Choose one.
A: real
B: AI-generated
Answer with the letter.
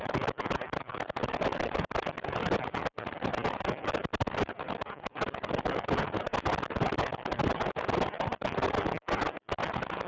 A